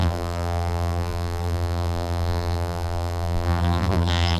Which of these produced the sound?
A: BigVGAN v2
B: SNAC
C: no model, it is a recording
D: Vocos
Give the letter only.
A